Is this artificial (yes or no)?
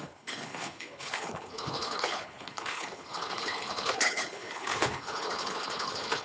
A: yes